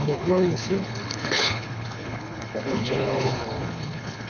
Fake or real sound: fake